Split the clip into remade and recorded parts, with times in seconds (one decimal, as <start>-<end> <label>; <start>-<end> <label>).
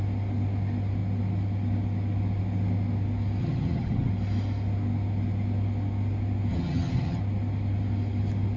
0.0-3.4 recorded; 3.4-4.1 remade; 4.1-6.5 recorded; 6.5-7.2 remade; 7.2-8.6 recorded